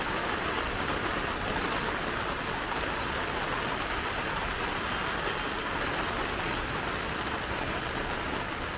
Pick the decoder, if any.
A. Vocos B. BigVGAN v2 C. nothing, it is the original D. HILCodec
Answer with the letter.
C